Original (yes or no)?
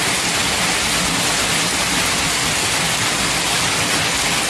yes